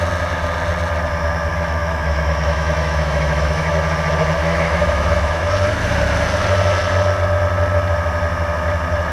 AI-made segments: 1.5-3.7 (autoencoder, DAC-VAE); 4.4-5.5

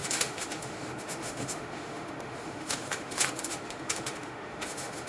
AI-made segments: 0.0-5.1 (autoencoder, DAC-VAE)

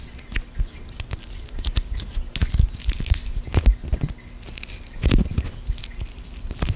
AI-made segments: none